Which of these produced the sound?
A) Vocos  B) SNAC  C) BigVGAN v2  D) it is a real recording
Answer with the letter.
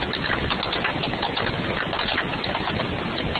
D